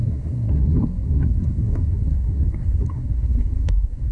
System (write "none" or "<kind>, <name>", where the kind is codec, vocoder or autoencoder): codec, SNAC